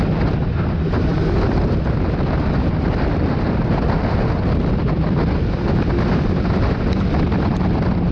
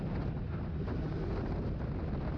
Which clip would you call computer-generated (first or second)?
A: first